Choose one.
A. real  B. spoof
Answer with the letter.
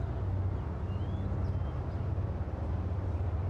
A